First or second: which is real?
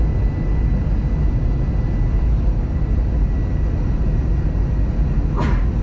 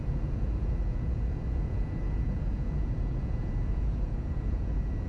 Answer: first